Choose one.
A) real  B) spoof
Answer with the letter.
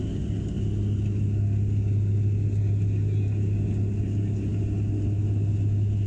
A